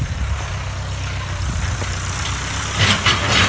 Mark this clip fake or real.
real